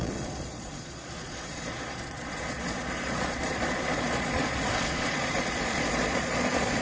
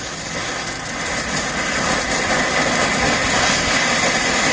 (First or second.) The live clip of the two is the second